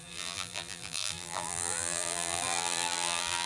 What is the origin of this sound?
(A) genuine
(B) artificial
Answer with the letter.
B